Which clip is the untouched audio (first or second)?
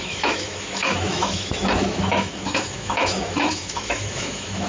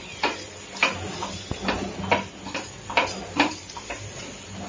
second